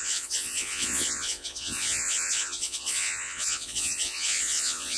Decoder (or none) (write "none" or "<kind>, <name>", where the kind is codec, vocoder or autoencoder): vocoder, Vocos